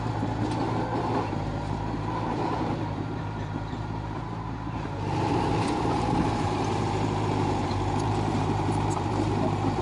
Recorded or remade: remade